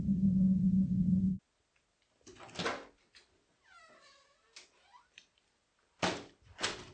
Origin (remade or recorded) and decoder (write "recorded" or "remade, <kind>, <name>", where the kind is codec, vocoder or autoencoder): recorded